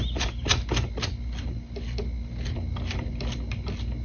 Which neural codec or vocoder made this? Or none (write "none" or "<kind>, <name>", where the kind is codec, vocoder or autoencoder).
none